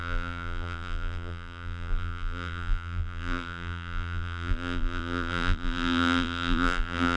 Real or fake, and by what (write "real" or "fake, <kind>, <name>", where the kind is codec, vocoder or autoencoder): fake, vocoder, BigVGAN v2